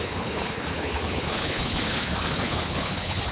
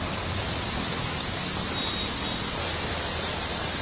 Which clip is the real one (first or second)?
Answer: second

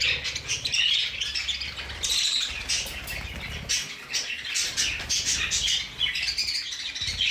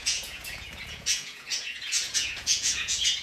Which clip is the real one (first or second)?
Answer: first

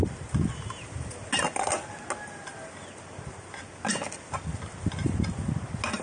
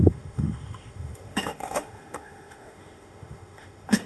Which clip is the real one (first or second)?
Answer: first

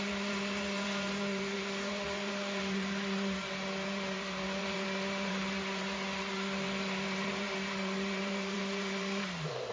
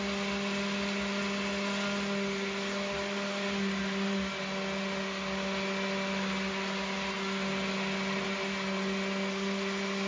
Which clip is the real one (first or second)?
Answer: second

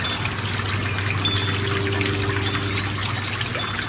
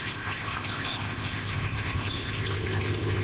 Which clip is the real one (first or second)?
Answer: first